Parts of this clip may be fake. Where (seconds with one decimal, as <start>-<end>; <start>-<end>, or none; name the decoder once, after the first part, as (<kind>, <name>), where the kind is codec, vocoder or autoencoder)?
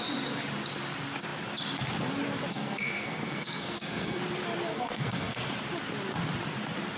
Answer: 2.5-4.2 (codec, SNAC); 4.7-5.4